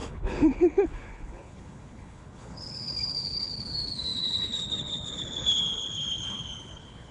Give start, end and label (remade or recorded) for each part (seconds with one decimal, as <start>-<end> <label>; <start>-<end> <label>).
0.0-7.1 remade